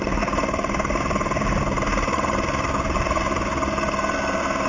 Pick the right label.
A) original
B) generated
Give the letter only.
A